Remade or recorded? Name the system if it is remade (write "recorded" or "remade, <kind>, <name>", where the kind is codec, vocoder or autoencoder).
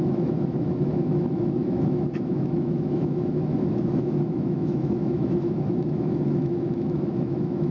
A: remade, autoencoder, DAC-VAE